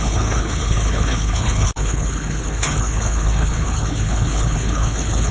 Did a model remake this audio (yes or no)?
yes